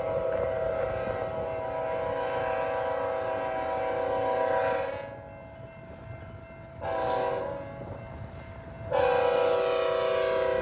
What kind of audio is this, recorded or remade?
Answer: recorded